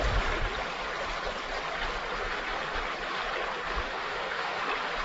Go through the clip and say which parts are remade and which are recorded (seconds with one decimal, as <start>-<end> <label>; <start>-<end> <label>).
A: 0.0-3.8 recorded; 3.8-4.6 remade; 4.6-5.0 recorded